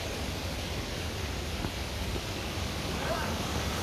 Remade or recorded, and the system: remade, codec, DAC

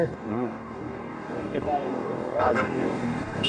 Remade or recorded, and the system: remade, codec, DAC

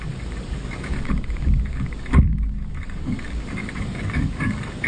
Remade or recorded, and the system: remade, codec, DAC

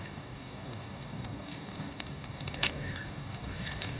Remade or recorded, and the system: remade, codec, DAC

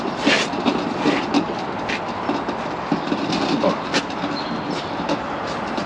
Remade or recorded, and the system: recorded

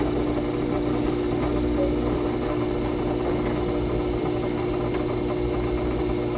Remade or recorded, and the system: recorded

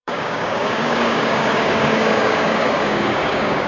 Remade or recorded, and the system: remade, codec, DAC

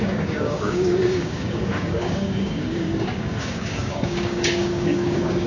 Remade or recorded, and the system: remade, codec, DAC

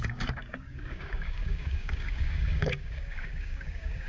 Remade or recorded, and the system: remade, codec, DAC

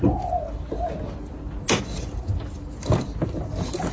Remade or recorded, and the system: recorded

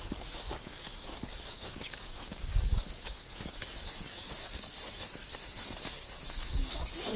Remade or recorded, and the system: remade, codec, DAC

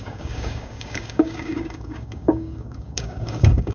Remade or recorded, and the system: remade, codec, DAC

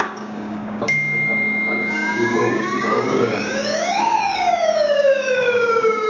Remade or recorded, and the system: remade, codec, DAC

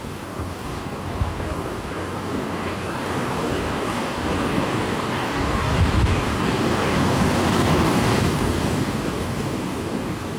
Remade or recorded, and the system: remade, codec, DAC